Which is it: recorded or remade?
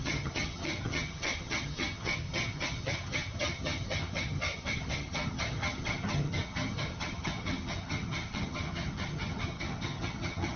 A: remade